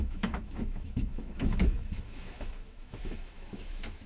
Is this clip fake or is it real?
fake